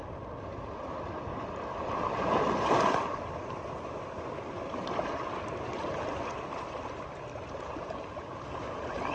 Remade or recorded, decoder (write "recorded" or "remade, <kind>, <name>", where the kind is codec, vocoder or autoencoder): recorded